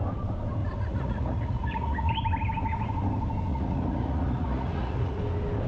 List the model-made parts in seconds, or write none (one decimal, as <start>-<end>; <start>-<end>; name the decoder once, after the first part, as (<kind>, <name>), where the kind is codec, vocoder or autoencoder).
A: 0.6-2.1 (vocoder, Vocos); 3.5-5.2